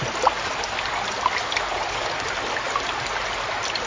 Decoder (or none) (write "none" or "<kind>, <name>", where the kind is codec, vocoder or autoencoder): none